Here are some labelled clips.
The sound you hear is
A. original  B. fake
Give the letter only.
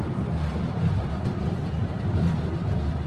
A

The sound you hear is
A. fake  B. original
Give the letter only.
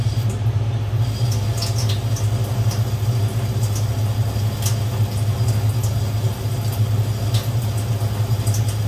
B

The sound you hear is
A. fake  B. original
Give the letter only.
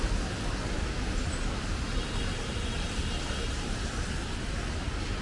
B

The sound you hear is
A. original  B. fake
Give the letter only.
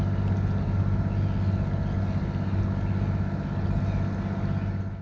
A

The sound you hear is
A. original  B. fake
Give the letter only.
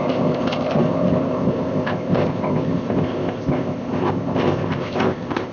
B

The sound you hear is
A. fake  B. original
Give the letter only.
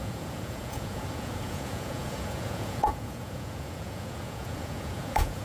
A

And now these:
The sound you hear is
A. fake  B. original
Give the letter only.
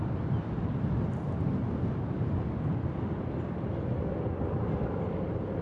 B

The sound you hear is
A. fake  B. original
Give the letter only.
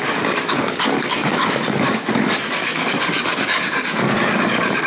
A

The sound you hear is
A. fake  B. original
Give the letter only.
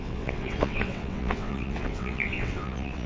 A